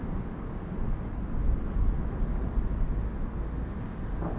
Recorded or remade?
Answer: recorded